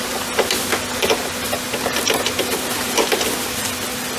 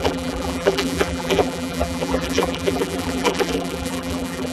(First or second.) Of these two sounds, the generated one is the second